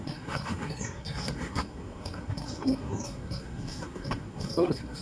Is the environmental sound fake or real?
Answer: fake